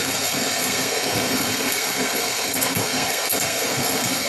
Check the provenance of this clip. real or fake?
fake